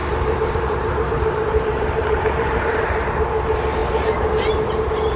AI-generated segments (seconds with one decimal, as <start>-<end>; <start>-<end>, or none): 0.0-3.1